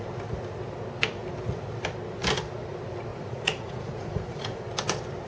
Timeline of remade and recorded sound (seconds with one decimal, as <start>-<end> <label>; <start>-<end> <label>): 0.0-3.1 recorded; 3.1-4.6 remade; 4.6-5.3 recorded